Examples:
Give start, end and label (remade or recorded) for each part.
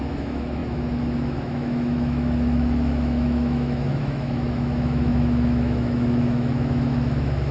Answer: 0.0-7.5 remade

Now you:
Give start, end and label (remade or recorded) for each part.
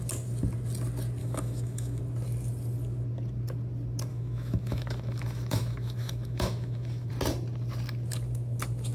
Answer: 0.0-1.2 recorded; 1.2-2.0 remade; 2.0-4.1 recorded; 4.1-7.1 remade; 7.1-8.9 recorded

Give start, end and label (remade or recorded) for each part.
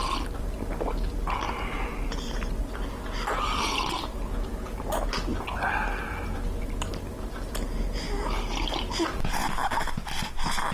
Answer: 0.0-10.7 recorded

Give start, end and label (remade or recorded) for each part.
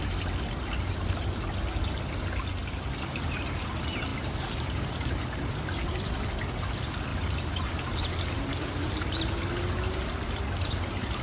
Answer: 0.0-4.1 recorded; 4.1-6.1 remade; 6.1-7.1 recorded; 7.1-9.4 remade; 9.4-11.2 recorded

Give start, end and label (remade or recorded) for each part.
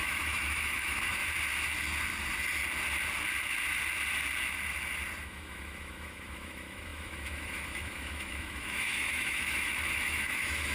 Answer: 0.0-1.2 remade; 1.2-5.2 recorded; 5.2-10.7 remade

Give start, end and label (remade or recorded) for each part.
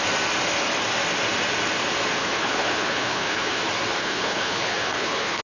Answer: 0.0-2.2 recorded; 2.2-3.6 remade; 3.6-4.0 recorded; 4.0-5.4 remade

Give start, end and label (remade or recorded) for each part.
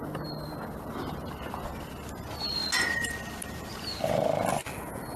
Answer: 0.0-5.2 recorded